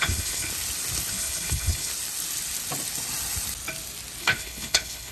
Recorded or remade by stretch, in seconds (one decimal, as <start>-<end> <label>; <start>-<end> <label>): 0.0-0.5 remade; 0.5-1.1 recorded; 1.1-1.9 remade; 1.9-4.2 recorded; 4.2-5.1 remade